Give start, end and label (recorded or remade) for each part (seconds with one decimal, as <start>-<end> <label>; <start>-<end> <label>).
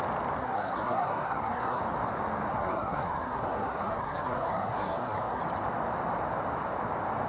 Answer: 0.0-0.4 recorded; 0.4-1.8 remade; 1.8-2.5 recorded; 2.5-5.4 remade; 5.4-7.3 recorded